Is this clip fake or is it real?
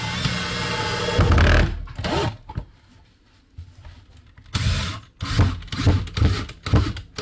real